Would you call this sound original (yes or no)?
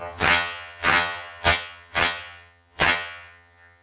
no